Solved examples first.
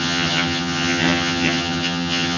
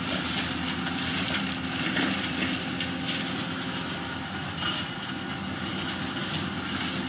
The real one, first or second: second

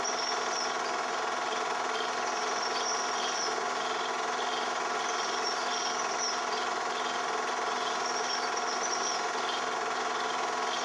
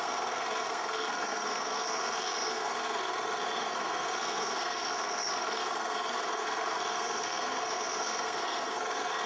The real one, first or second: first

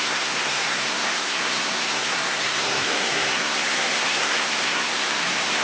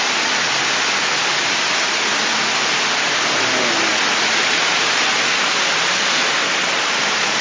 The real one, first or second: second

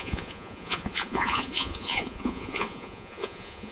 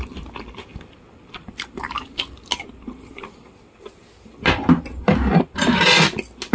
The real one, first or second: second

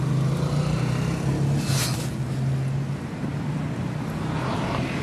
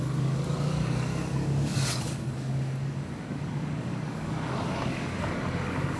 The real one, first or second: first